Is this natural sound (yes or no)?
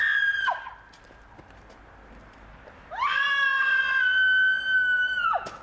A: yes